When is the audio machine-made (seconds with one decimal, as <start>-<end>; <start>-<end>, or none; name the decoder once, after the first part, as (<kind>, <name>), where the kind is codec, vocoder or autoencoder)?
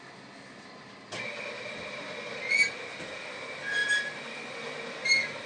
none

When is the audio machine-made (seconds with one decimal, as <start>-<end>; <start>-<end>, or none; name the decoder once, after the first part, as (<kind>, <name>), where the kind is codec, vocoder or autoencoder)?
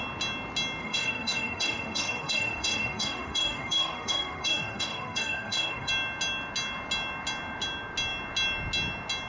0.8-5.9 (autoencoder, DAC-VAE)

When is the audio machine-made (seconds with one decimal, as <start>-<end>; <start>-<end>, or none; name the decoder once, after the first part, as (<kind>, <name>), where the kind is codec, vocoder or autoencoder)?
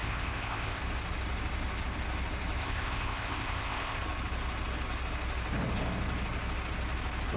0.0-0.8 (codec, ZipCodec); 2.6-4.0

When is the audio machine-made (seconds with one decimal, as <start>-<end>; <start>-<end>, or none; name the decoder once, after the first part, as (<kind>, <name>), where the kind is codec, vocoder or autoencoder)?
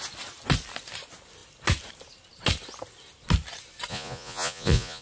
3.9-5.0 (vocoder, Vocos)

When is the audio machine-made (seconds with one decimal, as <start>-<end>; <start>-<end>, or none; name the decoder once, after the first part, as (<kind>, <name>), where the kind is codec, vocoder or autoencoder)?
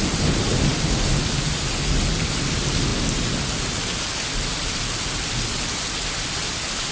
none